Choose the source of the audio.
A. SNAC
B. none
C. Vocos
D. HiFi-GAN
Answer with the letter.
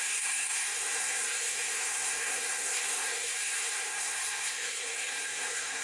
A